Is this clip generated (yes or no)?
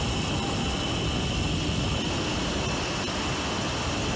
no